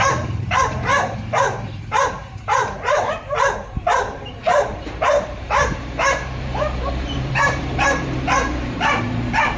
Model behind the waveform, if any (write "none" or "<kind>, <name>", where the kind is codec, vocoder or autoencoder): vocoder, BigVGAN v2